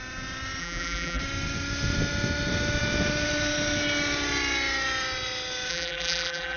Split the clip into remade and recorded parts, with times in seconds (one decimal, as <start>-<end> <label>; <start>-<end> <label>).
0.0-0.6 recorded; 0.6-1.2 remade; 1.2-5.7 recorded; 5.7-6.6 remade